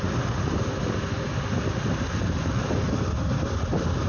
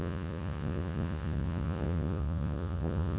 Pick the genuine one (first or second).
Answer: first